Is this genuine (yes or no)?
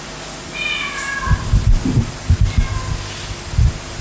yes